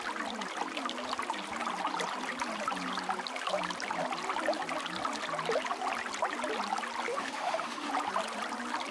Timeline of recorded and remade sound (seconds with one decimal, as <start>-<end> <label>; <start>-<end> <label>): 0.0-7.1 recorded; 7.1-7.9 remade; 7.9-8.9 recorded